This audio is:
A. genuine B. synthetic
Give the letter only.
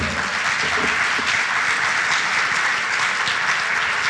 A